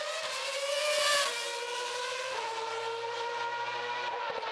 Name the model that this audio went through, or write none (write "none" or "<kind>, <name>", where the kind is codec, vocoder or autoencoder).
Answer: none